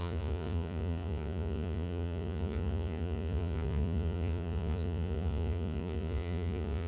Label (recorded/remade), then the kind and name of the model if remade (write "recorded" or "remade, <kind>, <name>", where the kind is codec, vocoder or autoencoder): remade, vocoder, Vocos